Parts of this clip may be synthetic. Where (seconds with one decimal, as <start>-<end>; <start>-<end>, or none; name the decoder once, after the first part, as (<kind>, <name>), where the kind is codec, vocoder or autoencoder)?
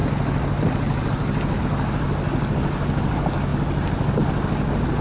none